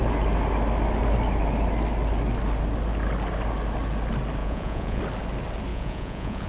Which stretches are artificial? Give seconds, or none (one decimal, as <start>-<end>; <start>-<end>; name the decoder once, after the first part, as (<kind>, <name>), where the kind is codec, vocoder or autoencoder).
4.4-5.0 (vocoder, Vocos); 5.7-6.5